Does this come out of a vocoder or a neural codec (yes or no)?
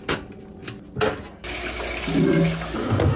no